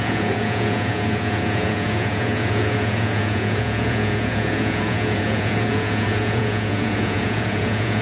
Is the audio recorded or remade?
remade